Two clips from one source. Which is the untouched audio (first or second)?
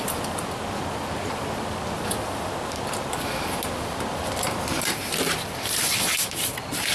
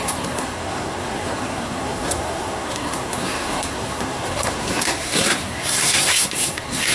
first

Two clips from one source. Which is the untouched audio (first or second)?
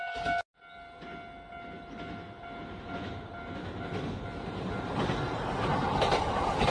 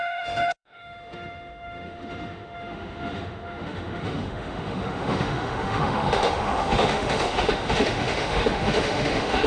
first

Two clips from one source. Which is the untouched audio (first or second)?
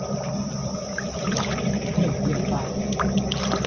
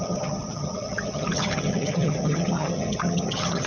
first